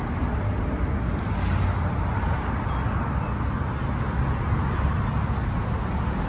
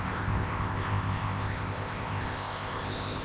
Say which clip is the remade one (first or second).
second